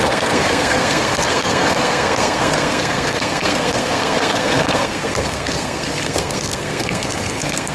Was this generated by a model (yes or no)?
yes